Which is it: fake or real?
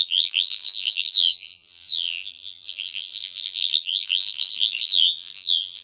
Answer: fake